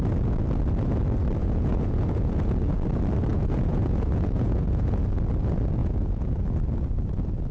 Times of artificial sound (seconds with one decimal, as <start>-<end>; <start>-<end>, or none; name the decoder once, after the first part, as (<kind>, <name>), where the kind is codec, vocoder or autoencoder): 1.4-2.5 (vocoder, Vocos); 3.3-5.1; 5.8-6.4